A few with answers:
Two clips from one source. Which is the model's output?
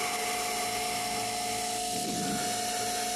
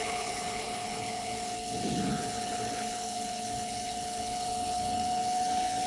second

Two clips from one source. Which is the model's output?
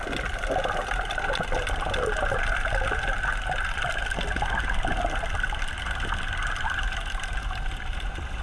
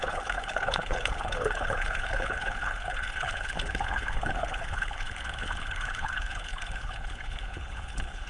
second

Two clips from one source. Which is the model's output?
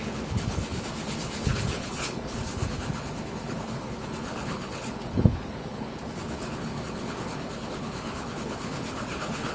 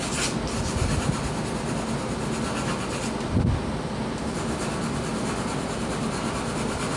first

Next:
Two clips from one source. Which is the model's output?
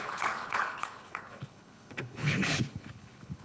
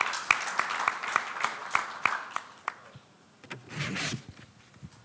first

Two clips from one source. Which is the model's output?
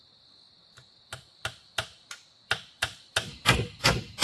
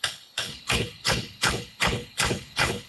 second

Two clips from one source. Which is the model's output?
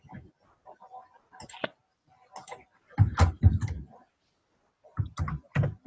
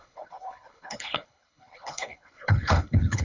second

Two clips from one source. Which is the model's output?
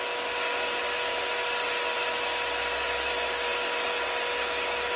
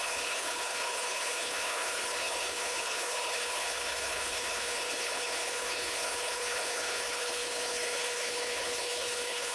second